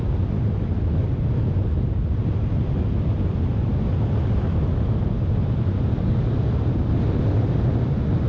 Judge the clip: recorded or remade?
recorded